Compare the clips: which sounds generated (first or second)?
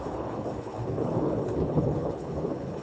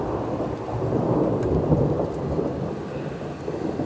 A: first